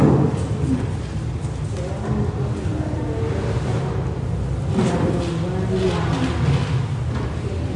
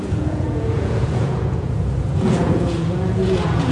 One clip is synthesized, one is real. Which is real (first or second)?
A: first